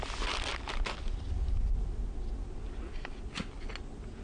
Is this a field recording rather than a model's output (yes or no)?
yes